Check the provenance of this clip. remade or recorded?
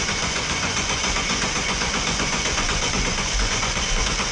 remade